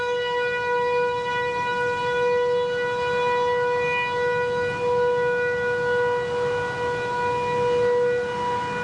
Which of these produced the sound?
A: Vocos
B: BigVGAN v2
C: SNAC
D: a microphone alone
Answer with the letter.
D